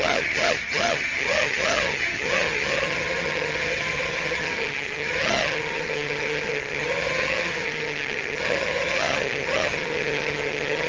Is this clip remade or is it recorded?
remade